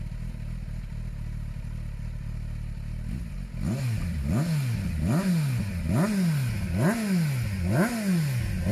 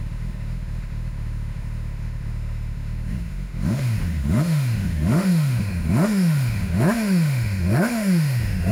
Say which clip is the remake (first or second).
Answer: second